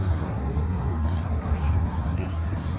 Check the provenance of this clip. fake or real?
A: fake